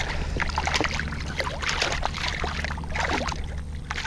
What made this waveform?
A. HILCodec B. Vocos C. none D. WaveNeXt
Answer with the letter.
C